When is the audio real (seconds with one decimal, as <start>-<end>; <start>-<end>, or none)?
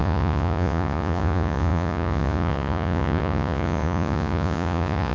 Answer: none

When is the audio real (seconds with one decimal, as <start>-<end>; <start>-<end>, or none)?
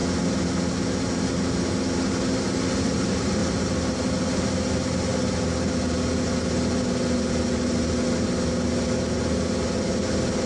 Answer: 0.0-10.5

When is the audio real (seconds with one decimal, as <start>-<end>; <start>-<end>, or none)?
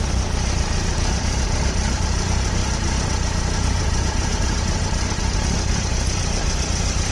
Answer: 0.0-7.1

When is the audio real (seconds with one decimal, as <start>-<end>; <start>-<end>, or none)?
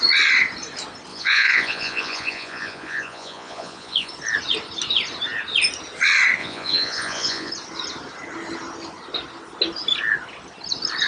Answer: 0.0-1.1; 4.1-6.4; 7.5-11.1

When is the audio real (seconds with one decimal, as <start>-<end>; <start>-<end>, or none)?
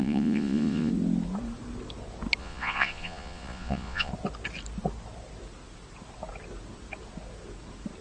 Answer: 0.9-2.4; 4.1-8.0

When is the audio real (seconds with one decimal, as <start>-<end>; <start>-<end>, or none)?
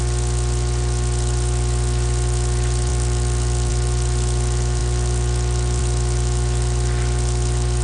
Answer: 0.0-7.8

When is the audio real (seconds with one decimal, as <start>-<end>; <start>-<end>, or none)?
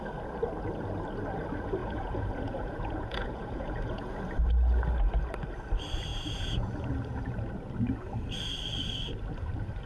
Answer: 0.0-1.8; 4.1-6.1; 6.7-9.9